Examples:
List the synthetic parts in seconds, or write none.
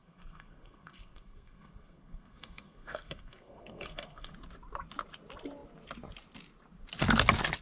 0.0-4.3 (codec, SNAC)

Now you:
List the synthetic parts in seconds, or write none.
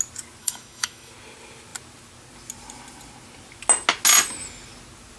0.4-1.1 (autoencoder, DAC-VAE)